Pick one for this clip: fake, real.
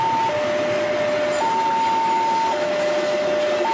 real